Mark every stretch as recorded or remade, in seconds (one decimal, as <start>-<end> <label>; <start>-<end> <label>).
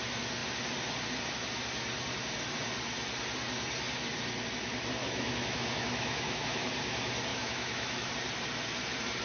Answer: 0.0-5.0 recorded; 5.0-6.7 remade; 6.7-7.3 recorded; 7.3-8.1 remade; 8.1-9.2 recorded